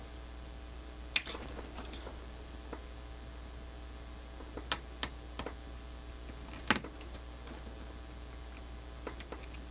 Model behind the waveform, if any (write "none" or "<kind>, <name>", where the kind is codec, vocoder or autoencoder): none